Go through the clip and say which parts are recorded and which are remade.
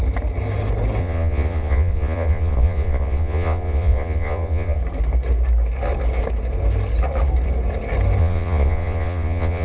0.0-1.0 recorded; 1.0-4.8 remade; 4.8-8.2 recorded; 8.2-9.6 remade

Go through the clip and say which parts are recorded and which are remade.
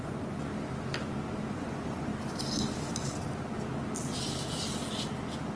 0.0-0.5 remade; 0.5-1.5 recorded; 1.5-2.1 remade; 2.1-5.6 recorded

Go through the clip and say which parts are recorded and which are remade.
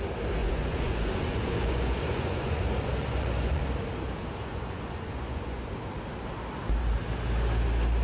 0.0-0.4 recorded; 0.4-3.6 remade; 3.6-4.4 recorded; 4.4-5.7 remade; 5.7-8.0 recorded